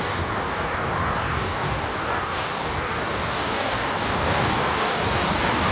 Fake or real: fake